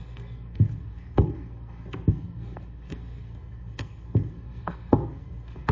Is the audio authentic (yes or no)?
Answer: no